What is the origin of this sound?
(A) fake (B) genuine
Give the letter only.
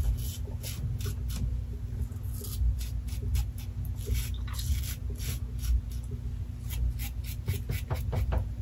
B